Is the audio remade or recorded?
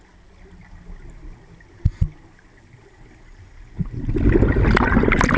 recorded